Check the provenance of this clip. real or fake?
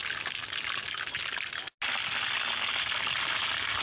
real